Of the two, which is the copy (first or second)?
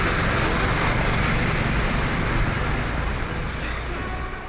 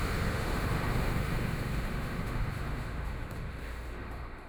second